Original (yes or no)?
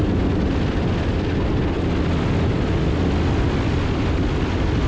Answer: yes